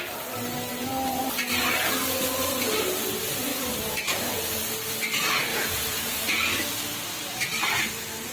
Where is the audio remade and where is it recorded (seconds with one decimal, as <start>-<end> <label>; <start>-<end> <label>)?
0.0-5.5 recorded; 5.5-6.4 remade; 6.4-8.3 recorded